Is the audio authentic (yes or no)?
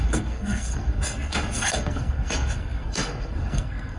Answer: no